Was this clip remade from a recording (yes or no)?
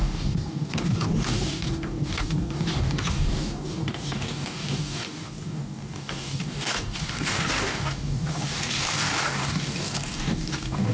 yes